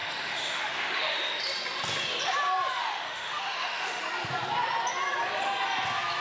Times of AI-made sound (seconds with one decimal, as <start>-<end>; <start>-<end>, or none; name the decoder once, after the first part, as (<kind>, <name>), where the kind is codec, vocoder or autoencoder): 0.0-1.4 (autoencoder, DAC-VAE); 2.8-4.0